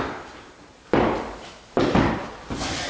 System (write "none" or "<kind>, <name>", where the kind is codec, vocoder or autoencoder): none